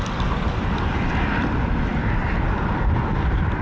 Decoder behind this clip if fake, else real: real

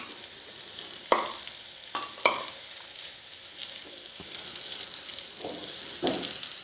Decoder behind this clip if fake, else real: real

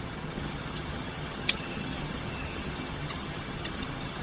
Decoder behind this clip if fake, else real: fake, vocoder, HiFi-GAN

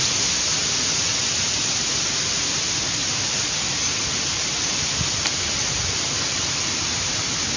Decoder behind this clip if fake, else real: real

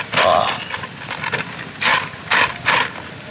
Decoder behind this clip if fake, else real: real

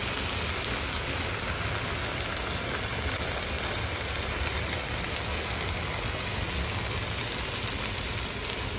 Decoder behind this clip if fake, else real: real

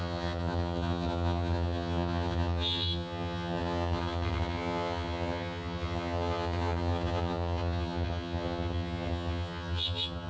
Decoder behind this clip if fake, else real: fake, vocoder, HiFi-GAN